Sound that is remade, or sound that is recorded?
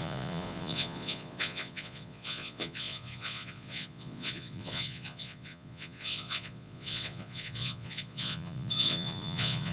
remade